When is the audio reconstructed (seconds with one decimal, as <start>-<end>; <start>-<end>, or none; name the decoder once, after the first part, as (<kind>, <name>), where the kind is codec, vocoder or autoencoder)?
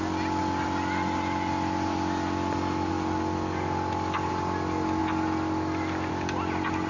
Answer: none